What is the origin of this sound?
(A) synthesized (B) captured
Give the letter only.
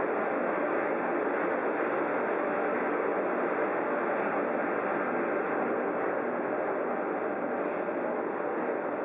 B